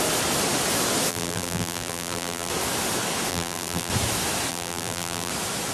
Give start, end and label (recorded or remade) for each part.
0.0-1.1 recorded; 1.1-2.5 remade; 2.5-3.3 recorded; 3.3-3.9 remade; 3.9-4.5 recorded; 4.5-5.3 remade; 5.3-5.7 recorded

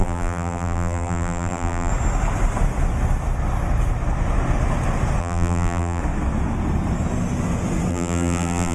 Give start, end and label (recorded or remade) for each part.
0.0-1.9 remade; 1.9-5.2 recorded; 5.2-6.0 remade; 6.0-7.9 recorded; 7.9-8.7 remade

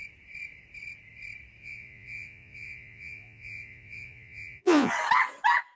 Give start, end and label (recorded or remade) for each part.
0.0-1.6 recorded; 1.6-4.9 remade; 4.9-5.8 recorded

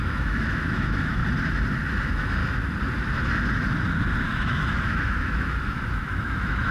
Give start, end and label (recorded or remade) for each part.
0.0-1.2 remade; 1.2-2.0 recorded; 2.0-2.4 remade; 2.4-4.2 recorded; 4.2-6.7 remade